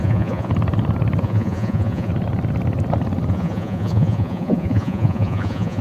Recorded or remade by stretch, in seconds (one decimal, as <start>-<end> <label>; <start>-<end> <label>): 0.0-0.5 remade; 0.5-1.2 recorded; 1.2-2.1 remade; 2.1-3.3 recorded; 3.3-5.8 remade